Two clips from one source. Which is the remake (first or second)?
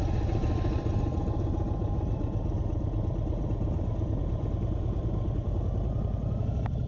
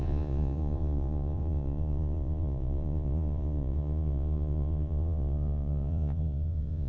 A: second